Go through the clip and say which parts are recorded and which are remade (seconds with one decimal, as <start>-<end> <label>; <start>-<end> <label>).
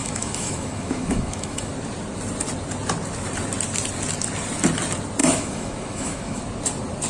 0.0-1.7 remade; 1.7-5.2 recorded; 5.2-6.4 remade; 6.4-7.1 recorded